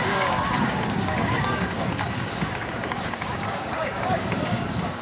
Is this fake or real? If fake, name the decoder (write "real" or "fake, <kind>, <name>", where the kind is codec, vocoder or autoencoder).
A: fake, codec, DAC